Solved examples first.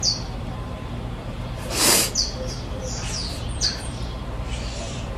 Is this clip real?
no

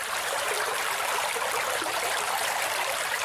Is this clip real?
no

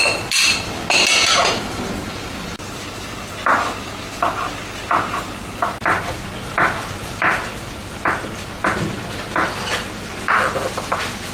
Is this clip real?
yes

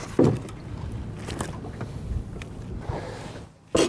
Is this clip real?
yes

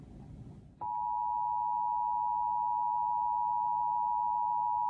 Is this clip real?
yes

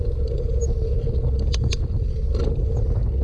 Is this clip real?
yes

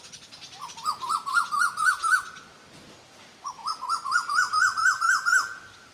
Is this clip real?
yes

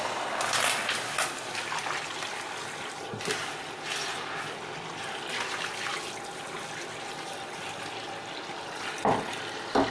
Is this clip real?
yes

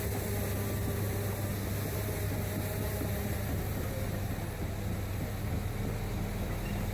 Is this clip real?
yes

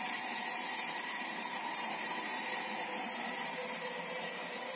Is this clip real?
no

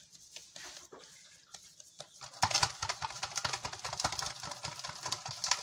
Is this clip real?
yes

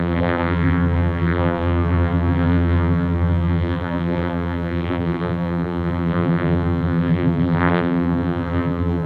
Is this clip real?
no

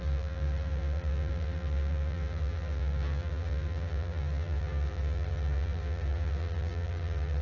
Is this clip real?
no